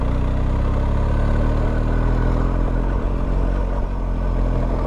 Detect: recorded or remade recorded